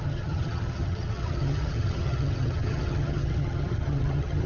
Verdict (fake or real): fake